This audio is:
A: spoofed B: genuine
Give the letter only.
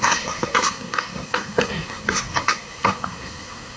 A